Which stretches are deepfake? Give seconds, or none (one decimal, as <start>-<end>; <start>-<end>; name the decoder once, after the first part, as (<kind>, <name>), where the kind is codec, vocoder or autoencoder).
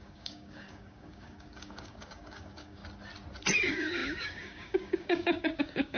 0.0-2.8 (codec, DAC); 3.6-6.0